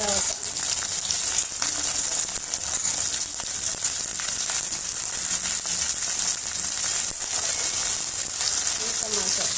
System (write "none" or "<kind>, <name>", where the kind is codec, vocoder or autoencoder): none